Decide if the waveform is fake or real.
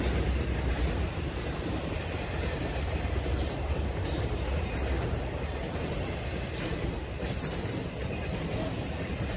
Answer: fake